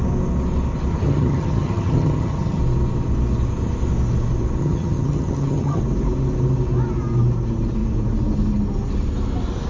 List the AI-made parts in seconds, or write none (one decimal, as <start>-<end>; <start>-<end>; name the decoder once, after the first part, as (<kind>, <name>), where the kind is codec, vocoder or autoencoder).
0.9-2.6 (vocoder, HiFi-GAN); 4.6-5.8